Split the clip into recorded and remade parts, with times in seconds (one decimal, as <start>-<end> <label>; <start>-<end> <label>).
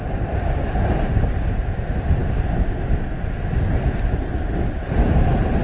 0.0-5.6 recorded